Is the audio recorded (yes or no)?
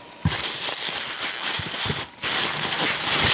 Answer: no